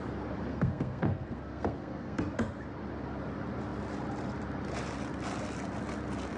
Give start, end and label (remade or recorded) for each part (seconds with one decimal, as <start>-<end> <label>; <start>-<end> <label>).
0.0-0.5 recorded; 0.5-2.2 remade; 2.2-6.4 recorded